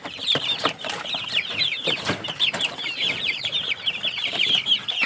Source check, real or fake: fake